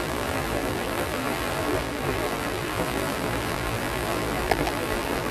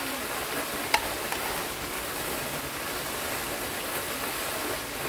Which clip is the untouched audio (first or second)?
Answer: second